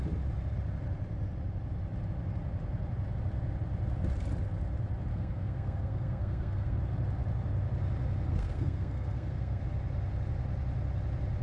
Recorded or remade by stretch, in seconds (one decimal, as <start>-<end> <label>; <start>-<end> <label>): 0.0-5.1 recorded; 5.1-6.8 remade; 6.8-8.3 recorded; 8.3-9.6 remade; 9.6-11.4 recorded